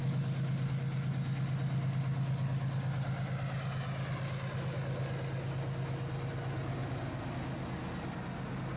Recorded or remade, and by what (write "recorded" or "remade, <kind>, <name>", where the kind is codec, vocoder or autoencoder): recorded